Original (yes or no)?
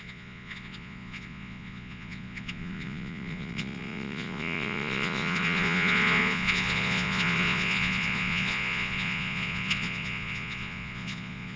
no